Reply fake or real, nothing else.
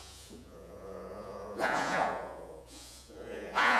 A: fake